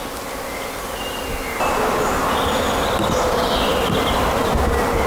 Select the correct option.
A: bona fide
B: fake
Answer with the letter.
A